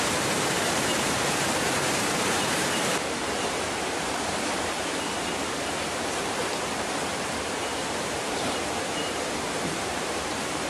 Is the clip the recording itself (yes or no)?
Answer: no